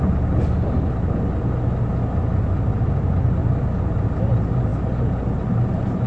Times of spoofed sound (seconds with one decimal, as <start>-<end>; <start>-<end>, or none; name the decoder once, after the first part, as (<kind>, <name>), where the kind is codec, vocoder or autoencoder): 3.4-4.1 (vocoder, BigVGAN v2)